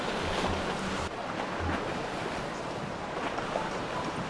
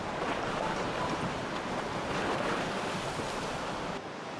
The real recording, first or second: first